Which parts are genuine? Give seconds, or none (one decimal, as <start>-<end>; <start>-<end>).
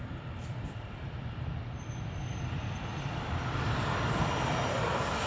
0.0-0.4; 1.2-2.9